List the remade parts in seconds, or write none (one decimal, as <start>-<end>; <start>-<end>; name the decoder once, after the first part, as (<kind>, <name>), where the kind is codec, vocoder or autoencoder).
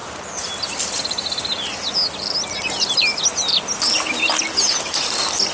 none